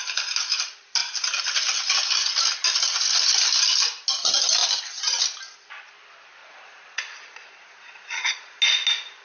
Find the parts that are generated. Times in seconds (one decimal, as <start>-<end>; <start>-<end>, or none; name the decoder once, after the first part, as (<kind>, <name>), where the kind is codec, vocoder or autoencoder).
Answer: 6.4-8.6 (vocoder, Vocos)